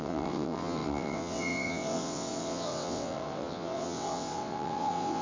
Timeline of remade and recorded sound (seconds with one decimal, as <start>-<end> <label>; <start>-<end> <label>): 0.0-5.2 remade

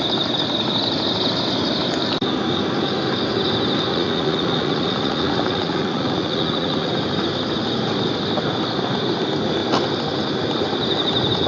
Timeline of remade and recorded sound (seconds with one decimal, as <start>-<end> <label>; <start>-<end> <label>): 0.0-3.9 recorded; 3.9-6.9 remade; 6.9-11.5 recorded

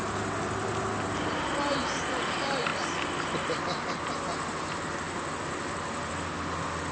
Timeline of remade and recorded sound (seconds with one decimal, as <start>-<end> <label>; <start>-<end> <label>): 0.0-6.9 recorded

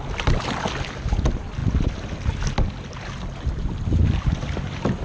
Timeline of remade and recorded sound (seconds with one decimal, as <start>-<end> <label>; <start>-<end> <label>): 0.0-5.0 recorded

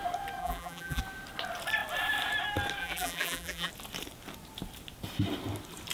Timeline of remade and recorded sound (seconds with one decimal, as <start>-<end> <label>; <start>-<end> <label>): 0.0-0.4 recorded; 0.4-1.0 remade; 1.0-2.8 recorded; 2.8-3.7 remade; 3.7-5.9 recorded

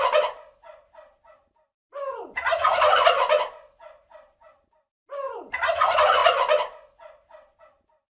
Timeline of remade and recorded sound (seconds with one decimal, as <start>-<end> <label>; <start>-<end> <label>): 0.0-8.2 recorded